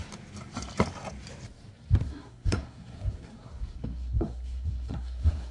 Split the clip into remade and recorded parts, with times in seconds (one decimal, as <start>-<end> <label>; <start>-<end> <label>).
0.0-2.0 recorded; 2.0-5.5 remade